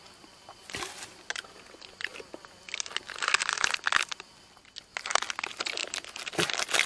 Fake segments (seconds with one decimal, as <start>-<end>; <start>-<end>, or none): 0.5-1.3; 5.8-6.9